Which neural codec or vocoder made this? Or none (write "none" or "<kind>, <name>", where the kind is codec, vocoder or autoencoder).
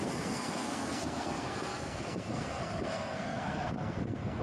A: codec, SNAC